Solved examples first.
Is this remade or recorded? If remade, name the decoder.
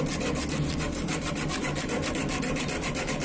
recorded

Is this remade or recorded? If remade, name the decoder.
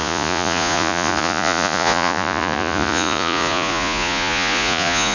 remade, vocoder, Vocos